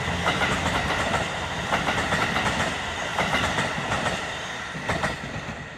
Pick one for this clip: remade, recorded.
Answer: recorded